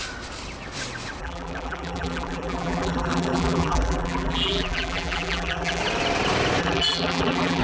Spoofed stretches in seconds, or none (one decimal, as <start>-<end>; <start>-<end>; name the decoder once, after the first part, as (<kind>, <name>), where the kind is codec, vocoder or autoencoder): 1.2-5.8 (vocoder, BigVGAN v2); 6.6-7.6